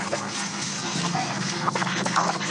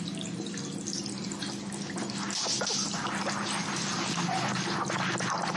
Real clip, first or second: second